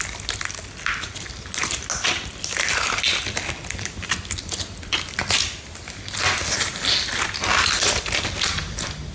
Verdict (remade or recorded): recorded